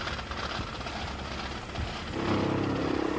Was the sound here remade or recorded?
recorded